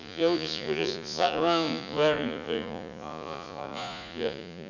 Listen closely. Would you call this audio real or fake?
fake